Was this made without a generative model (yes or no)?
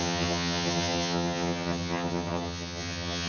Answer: no